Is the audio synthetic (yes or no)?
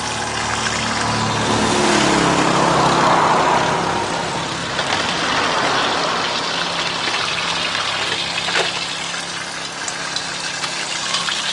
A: no